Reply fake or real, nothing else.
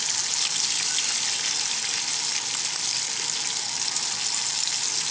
real